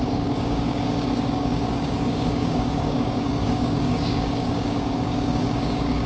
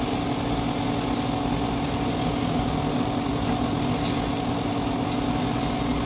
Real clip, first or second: second